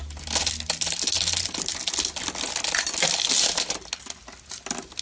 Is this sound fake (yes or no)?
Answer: no